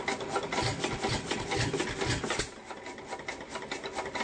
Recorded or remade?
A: recorded